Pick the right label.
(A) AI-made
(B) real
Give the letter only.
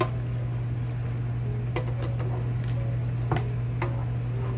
B